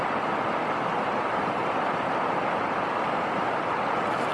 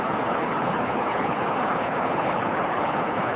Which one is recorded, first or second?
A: first